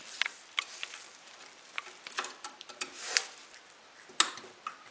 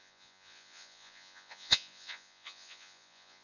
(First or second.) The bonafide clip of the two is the first